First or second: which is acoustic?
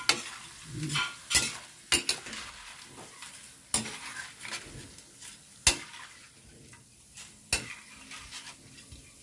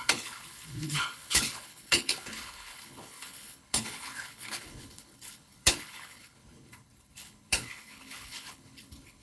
first